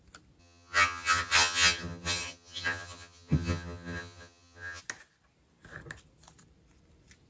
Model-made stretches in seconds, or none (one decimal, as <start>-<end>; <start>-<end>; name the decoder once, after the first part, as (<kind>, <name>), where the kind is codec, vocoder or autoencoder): 0.4-4.8 (vocoder, HiFi-GAN)